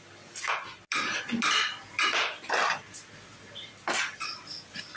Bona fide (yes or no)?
yes